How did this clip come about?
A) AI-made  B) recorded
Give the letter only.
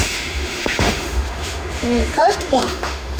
A